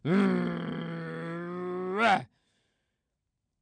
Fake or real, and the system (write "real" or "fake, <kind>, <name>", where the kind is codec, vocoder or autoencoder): real